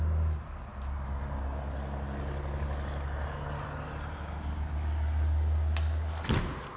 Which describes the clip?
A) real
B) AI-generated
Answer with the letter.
A